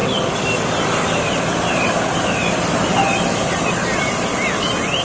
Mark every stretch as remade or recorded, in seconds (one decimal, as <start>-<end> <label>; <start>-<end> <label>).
0.0-5.0 recorded